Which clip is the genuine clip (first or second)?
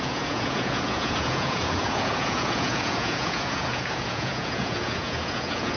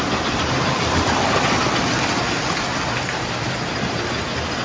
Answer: second